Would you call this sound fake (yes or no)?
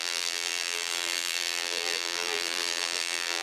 yes